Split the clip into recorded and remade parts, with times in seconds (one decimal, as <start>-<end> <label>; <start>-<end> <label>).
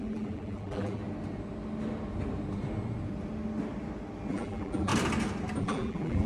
0.0-1.0 remade; 1.0-4.3 recorded; 4.3-4.9 remade; 4.9-5.6 recorded; 5.6-6.3 remade